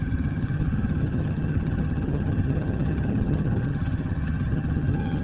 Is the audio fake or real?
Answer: fake